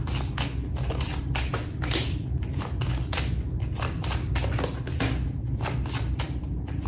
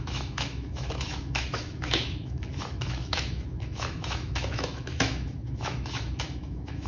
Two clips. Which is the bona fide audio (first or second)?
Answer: first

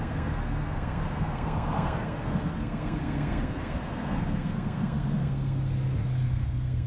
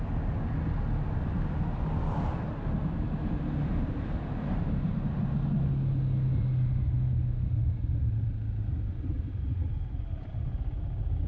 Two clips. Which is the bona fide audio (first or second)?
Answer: second